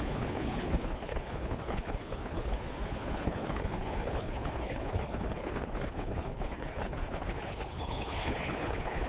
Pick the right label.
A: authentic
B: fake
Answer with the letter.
B